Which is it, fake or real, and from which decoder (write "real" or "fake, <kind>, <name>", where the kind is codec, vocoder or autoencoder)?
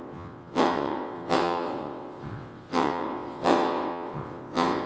fake, vocoder, WaveNeXt